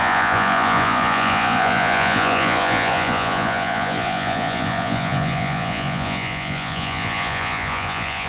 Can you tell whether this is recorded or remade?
remade